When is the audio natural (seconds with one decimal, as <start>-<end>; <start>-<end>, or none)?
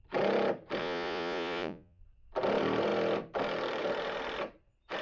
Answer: 0.0-0.8; 2.0-5.0